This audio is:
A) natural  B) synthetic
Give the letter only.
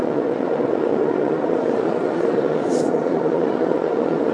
B